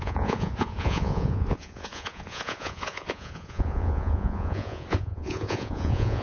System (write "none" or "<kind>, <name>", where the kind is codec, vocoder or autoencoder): vocoder, Vocos